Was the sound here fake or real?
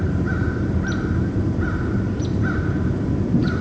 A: fake